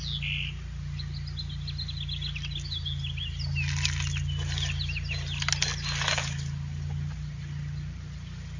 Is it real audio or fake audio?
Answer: real